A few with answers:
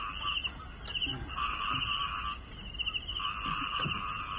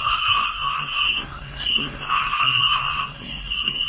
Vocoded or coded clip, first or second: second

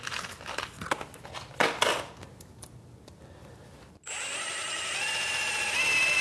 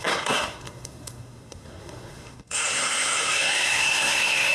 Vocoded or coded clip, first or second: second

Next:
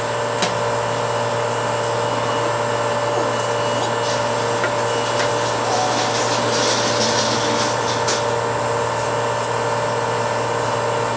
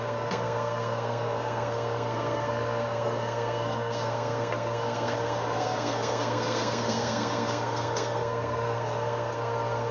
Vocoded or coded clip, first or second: second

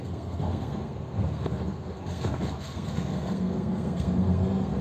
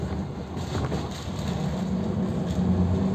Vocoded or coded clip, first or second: first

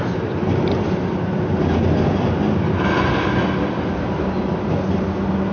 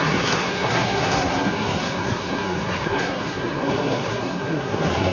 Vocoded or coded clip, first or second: second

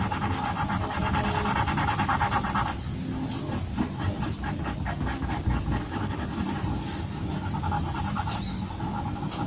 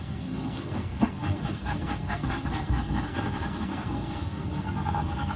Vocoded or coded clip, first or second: second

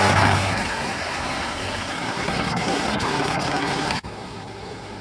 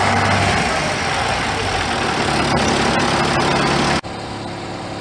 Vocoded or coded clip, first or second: first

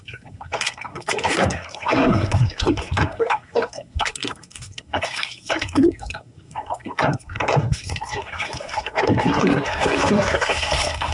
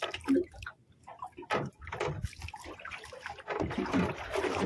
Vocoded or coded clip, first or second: first